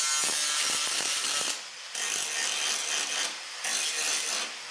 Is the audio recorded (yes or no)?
yes